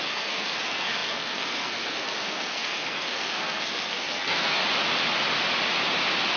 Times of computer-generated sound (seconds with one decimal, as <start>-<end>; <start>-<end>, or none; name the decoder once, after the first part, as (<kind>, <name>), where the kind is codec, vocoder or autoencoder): 0.0-4.6 (codec, SNAC)